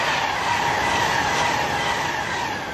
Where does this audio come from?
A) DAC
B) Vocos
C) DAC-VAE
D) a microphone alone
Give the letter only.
D